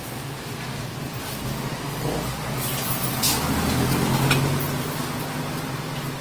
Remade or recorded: recorded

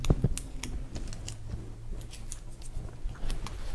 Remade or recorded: recorded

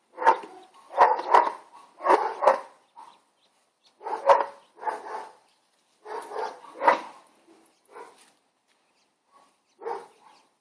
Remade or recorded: recorded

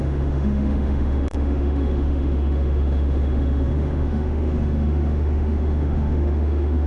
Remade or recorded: remade